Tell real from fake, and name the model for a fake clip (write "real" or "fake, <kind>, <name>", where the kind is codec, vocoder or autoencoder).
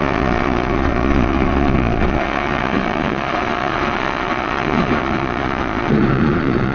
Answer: fake, vocoder, Vocos